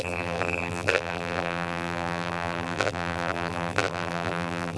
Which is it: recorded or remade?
remade